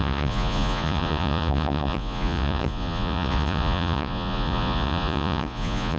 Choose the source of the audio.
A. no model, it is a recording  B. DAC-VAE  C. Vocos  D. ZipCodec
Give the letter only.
C